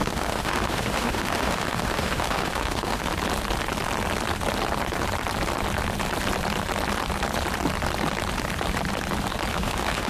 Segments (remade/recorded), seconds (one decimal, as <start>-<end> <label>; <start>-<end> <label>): 0.0-3.1 remade; 3.1-9.5 recorded; 9.5-10.1 remade